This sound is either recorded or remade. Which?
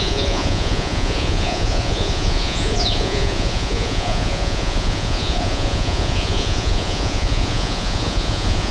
remade